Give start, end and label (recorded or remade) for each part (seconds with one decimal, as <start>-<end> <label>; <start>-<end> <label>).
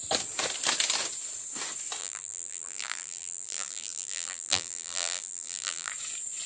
0.0-2.0 recorded; 2.0-5.9 remade; 5.9-6.5 recorded